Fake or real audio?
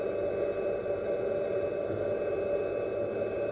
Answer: real